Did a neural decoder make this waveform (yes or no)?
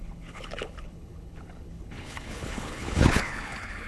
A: yes